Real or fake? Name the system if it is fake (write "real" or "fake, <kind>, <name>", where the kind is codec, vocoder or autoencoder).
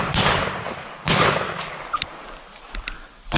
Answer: real